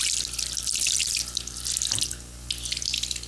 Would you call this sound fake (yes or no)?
no